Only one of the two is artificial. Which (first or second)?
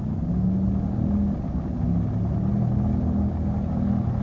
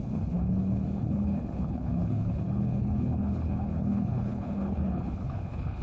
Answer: second